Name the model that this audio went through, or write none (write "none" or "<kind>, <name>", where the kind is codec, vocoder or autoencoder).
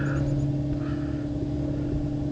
none